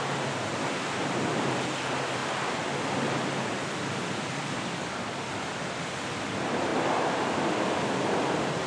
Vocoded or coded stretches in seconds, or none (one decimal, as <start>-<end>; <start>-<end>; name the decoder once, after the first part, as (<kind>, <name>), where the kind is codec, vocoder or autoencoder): 0.0-2.2 (vocoder, BigVGAN v2); 3.9-6.7; 7.3-8.7